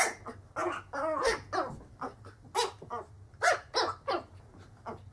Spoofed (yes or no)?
no